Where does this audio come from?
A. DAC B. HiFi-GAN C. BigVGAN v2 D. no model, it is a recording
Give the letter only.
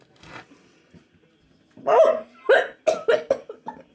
D